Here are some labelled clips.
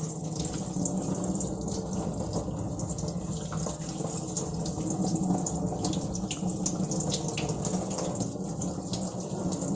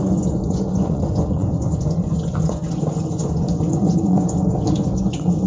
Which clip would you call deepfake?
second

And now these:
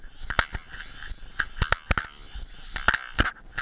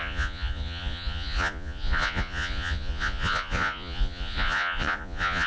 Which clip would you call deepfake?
second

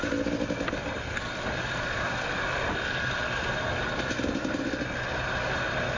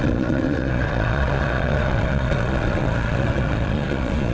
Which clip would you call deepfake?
second